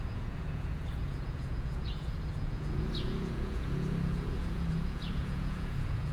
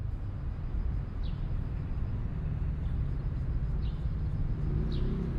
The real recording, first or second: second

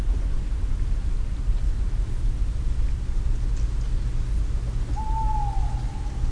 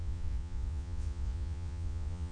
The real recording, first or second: first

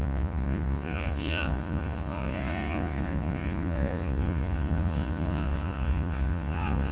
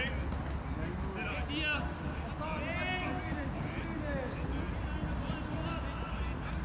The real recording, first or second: second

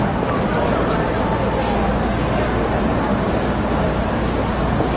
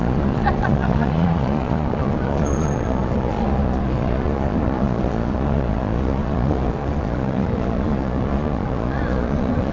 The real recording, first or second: first